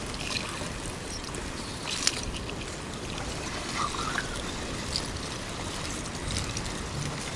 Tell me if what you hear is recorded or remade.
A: recorded